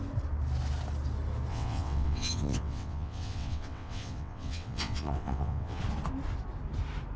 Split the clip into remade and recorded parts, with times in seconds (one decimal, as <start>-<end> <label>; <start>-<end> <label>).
0.0-1.5 recorded; 1.5-5.8 remade; 5.8-7.2 recorded